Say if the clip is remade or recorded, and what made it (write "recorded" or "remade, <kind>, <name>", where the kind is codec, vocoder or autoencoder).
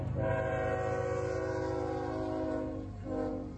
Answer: recorded